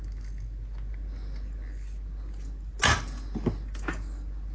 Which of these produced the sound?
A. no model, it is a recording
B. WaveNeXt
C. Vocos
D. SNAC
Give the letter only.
A